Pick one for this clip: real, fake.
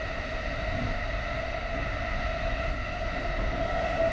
real